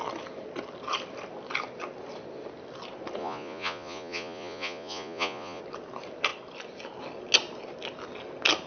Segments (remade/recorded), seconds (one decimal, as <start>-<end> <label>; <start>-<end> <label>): 0.0-3.2 recorded; 3.2-5.6 remade; 5.6-8.7 recorded